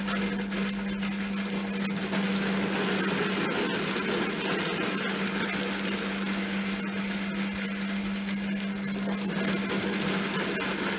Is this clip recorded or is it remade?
recorded